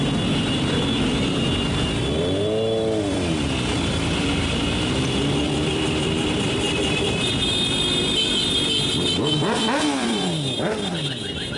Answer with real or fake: fake